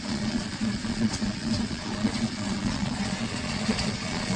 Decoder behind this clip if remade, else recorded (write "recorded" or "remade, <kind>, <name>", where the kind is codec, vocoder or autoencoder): remade, vocoder, Vocos